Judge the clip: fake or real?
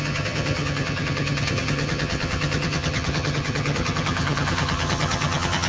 fake